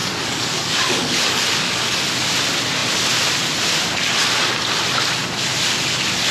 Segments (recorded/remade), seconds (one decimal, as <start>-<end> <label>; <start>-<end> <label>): 0.0-2.0 remade; 2.0-6.3 recorded